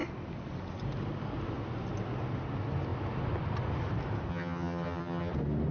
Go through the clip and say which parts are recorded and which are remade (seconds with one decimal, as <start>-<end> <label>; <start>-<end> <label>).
0.0-4.3 recorded; 4.3-5.3 remade; 5.3-5.7 recorded